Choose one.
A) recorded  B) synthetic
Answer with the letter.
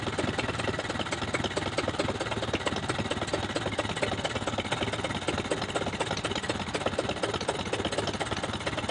A